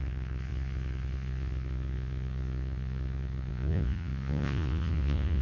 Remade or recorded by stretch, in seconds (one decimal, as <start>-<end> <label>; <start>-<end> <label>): 0.0-5.4 remade